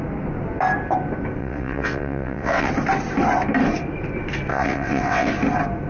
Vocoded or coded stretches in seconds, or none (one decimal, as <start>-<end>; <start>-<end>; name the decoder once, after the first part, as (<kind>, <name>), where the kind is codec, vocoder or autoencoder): 1.4-2.7 (vocoder, WaveNeXt); 4.5-5.3